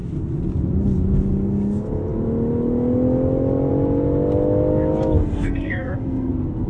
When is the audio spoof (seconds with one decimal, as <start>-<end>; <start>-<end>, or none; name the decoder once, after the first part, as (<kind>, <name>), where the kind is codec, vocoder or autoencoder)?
5.2-6.3 (codec, SNAC)